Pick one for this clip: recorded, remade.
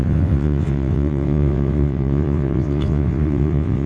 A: remade